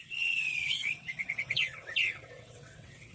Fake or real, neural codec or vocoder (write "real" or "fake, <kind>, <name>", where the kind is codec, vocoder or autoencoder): fake, vocoder, WaveNeXt